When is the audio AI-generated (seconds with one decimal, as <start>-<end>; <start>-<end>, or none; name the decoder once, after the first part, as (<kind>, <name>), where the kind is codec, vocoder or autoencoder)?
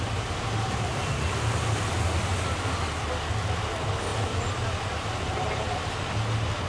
none